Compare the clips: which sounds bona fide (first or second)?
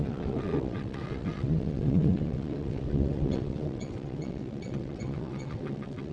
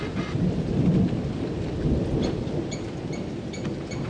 second